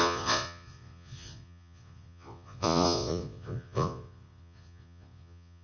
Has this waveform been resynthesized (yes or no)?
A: yes